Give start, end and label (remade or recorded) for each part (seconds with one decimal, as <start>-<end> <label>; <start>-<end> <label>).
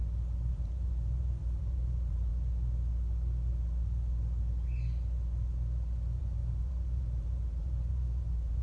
0.0-0.5 recorded; 0.5-2.3 remade; 2.3-6.2 recorded; 6.2-8.6 remade